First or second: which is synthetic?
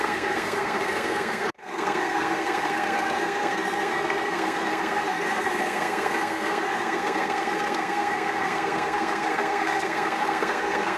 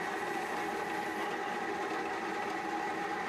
first